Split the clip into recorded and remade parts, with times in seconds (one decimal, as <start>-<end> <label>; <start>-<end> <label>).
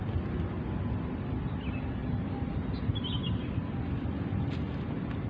0.0-5.3 recorded